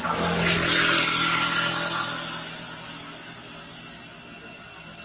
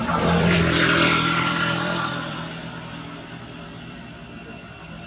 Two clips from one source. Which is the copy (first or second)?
second